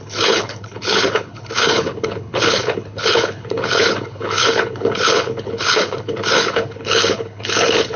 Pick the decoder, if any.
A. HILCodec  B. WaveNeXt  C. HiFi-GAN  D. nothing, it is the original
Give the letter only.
A